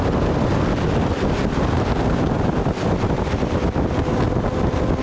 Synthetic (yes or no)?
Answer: no